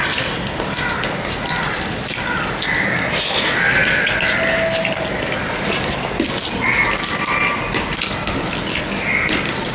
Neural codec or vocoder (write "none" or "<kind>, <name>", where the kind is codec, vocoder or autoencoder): none